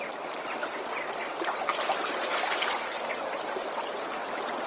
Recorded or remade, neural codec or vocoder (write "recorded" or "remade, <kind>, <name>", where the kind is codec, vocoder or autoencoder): remade, vocoder, BigVGAN v2